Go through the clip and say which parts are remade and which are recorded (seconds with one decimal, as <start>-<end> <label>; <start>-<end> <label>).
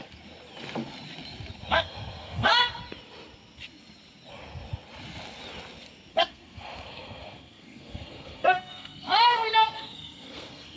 0.0-1.7 recorded; 1.7-2.8 remade; 2.8-6.1 recorded; 6.1-10.8 remade